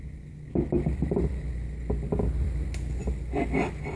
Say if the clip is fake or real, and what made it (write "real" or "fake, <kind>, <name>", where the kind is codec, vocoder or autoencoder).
real